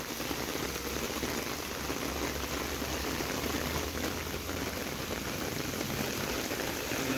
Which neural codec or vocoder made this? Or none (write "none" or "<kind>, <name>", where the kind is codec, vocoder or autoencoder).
none